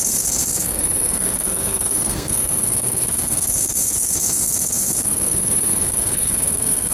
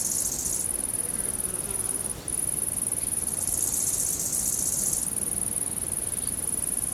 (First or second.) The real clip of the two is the second